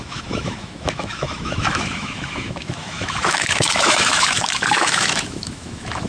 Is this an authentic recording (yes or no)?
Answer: no